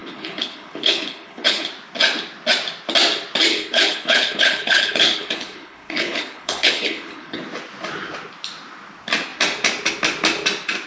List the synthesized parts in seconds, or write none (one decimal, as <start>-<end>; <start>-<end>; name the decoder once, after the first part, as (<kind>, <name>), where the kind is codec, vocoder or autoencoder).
0.0-1.7 (codec, HILCodec); 3.5-7.4